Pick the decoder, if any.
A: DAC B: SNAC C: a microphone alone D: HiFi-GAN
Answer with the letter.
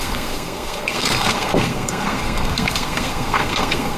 B